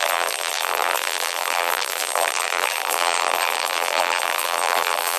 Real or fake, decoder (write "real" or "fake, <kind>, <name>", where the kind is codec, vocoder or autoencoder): fake, vocoder, BigVGAN v2